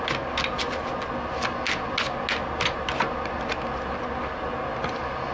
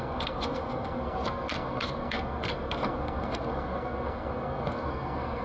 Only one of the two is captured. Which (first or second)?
first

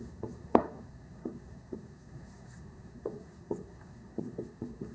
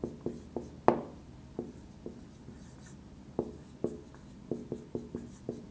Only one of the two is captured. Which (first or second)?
second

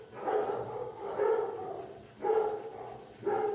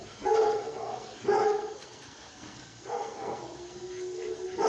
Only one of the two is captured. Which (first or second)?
first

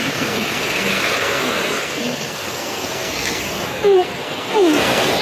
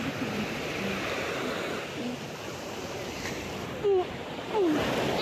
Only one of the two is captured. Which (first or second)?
second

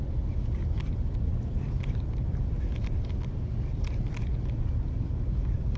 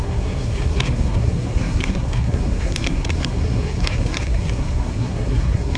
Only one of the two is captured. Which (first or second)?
first